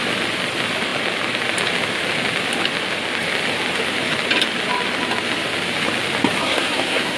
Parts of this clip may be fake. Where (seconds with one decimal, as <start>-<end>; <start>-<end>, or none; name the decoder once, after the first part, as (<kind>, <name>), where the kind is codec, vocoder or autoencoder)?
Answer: 6.4-7.2 (codec, SNAC)